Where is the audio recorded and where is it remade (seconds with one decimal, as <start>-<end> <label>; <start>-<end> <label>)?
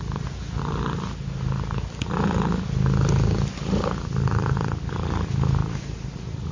0.0-6.5 recorded